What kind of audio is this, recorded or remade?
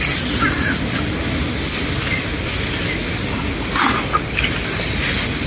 recorded